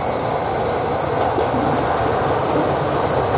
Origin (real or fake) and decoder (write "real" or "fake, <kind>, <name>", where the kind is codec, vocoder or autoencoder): real